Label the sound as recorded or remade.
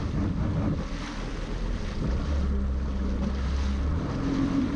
recorded